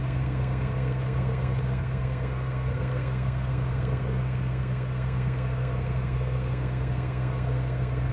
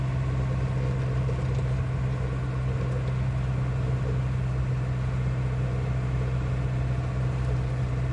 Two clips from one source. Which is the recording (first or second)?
second